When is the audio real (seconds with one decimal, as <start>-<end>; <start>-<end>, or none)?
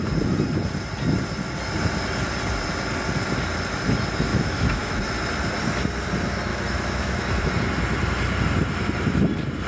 0.0-4.3; 5.0-6.5; 7.5-9.7